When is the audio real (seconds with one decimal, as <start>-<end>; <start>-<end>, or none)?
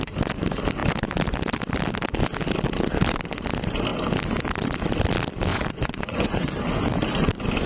0.0-5.5; 6.5-7.7